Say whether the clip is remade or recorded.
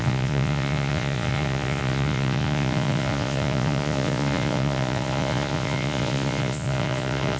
remade